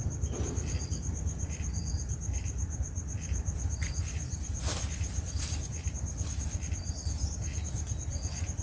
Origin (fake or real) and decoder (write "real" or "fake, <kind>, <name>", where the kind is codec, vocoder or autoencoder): fake, vocoder, BigVGAN v2